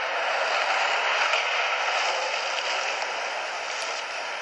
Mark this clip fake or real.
real